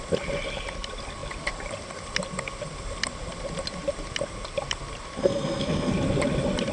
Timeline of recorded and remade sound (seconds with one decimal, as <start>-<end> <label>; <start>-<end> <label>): 0.0-5.2 recorded; 5.2-5.9 remade; 5.9-6.7 recorded

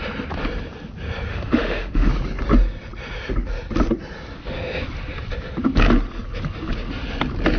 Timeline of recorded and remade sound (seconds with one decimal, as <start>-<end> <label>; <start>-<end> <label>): 0.0-1.3 recorded; 1.3-2.1 remade; 2.1-7.6 recorded

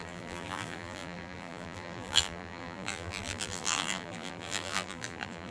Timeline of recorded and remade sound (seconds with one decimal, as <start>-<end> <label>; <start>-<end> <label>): 0.0-5.5 remade

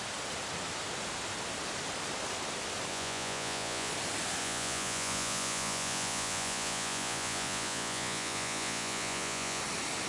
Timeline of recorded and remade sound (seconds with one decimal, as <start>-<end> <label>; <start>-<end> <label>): 0.0-2.9 recorded; 2.9-3.9 remade; 3.9-4.4 recorded; 4.4-9.6 remade; 9.6-10.1 recorded